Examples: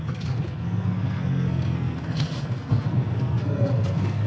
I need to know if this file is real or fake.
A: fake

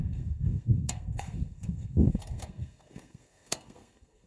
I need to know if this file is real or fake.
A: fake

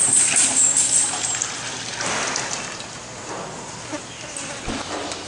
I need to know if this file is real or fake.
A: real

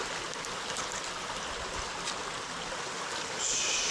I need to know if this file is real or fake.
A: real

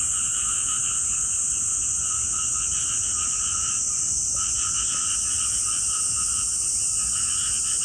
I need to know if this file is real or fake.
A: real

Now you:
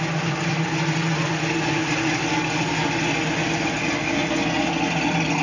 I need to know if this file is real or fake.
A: real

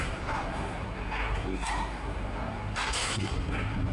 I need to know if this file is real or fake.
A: fake